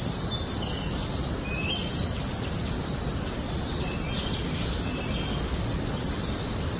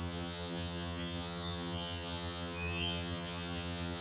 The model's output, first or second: second